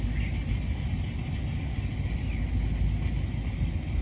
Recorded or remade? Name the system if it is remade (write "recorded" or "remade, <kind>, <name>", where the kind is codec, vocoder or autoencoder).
recorded